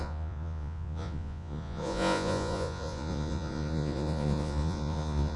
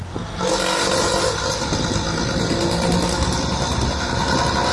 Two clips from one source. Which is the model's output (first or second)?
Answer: first